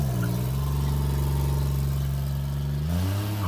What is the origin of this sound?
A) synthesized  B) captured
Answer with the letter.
B